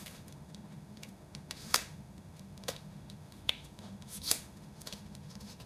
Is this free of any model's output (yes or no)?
no